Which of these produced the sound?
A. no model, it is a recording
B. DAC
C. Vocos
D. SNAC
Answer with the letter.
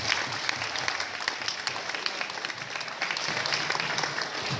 A